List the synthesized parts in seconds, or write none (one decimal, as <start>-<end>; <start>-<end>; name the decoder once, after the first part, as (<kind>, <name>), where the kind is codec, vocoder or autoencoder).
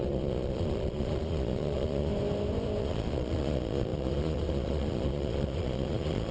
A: 0.0-2.1 (vocoder, Vocos); 2.8-6.3